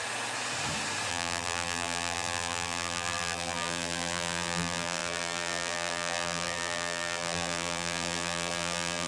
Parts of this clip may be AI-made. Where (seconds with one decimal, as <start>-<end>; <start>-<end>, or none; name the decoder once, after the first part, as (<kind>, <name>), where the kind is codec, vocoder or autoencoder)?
1.1-9.1 (vocoder, BigVGAN v2)